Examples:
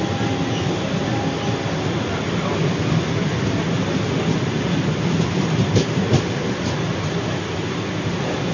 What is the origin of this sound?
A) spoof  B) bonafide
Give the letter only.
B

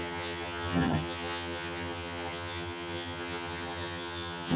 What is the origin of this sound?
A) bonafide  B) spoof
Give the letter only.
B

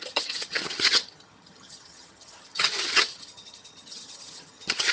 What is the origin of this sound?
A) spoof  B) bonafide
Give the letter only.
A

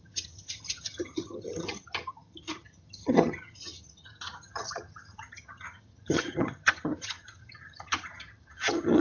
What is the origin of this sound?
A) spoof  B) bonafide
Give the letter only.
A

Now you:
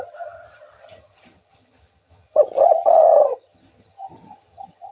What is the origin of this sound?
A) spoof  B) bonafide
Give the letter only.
A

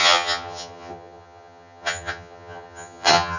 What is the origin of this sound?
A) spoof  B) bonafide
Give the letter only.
A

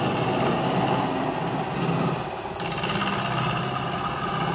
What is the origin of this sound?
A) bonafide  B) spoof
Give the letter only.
A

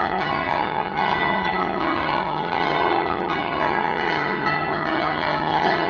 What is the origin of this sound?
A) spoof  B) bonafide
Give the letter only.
A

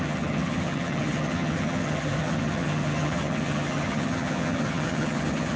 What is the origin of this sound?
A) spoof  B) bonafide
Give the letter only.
A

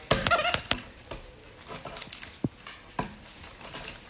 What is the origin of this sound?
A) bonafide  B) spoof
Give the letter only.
A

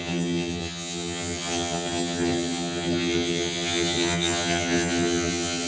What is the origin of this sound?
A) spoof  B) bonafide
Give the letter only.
A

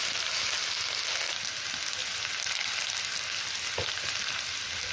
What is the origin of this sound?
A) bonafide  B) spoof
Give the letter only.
A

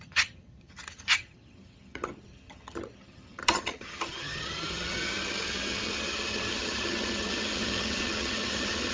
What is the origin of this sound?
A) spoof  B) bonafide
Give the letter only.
A